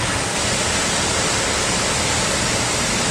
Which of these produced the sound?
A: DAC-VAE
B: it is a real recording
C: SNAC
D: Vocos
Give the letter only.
B